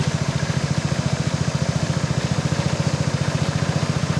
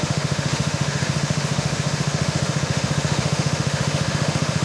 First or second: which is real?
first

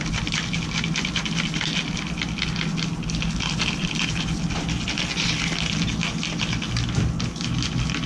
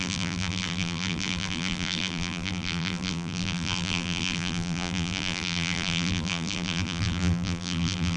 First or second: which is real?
first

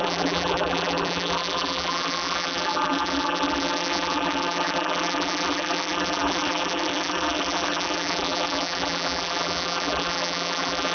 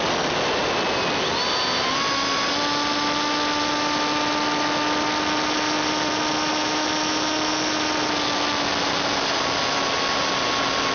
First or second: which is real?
second